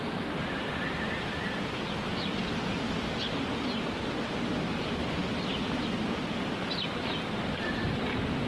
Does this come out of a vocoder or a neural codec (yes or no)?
no